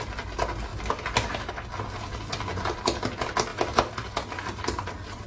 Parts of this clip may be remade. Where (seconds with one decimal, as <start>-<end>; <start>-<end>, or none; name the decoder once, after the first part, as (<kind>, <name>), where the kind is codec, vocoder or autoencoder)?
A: none